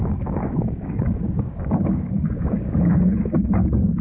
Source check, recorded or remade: remade